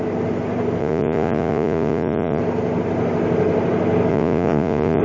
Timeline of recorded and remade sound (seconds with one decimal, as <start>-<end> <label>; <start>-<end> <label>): 0.0-0.8 recorded; 0.8-2.4 remade; 2.4-4.1 recorded; 4.1-5.0 remade